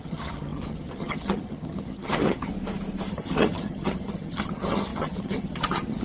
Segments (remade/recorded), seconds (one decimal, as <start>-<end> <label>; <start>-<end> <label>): 0.0-2.5 remade; 2.5-3.1 recorded; 3.1-6.0 remade